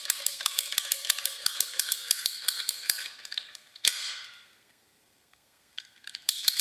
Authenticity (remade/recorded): remade